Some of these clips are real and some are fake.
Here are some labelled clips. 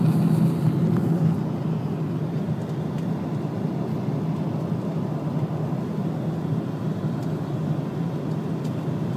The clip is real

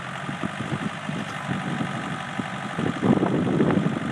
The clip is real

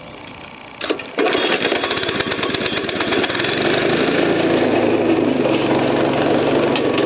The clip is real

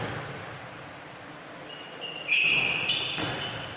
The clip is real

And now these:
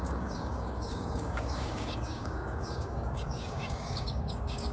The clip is fake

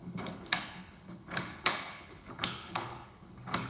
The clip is fake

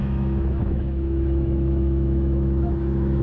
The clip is fake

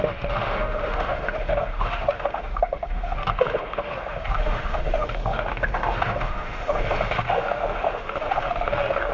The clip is fake